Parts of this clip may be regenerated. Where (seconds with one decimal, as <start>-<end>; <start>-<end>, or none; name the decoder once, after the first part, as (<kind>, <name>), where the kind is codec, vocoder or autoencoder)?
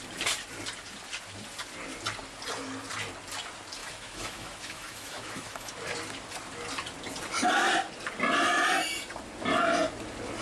3.8-5.7 (autoencoder, DAC-VAE)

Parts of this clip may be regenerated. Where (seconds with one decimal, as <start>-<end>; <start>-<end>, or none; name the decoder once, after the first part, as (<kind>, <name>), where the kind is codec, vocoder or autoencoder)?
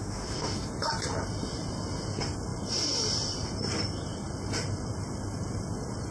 0.0-0.7 (autoencoder, DAC-VAE)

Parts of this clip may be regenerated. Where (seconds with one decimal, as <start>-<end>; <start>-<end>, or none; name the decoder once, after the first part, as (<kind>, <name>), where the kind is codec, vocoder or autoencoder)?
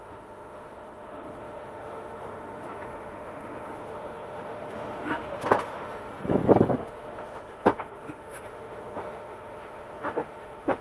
0.0-6.1 (autoencoder, DAC-VAE); 6.7-10.8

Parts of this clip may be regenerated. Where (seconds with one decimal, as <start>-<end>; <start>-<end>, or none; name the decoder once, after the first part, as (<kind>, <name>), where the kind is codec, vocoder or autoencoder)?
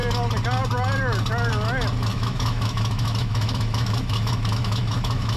2.1-5.4 (autoencoder, DAC-VAE)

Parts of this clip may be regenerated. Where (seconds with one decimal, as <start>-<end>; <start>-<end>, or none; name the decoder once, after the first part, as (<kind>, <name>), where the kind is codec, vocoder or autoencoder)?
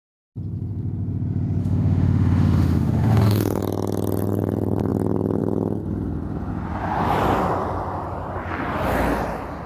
1.6-3.6 (autoencoder, DAC-VAE)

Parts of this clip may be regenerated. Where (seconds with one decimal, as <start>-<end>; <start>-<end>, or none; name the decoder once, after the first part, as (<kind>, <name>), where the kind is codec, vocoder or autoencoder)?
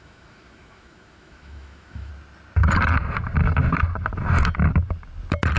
0.0-2.1 (autoencoder, DAC-VAE)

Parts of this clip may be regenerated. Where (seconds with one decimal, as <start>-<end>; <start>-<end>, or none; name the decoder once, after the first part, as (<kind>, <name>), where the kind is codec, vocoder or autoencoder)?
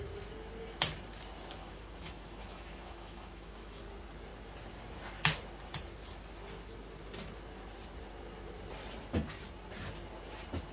1.6-3.8 (autoencoder, DAC-VAE)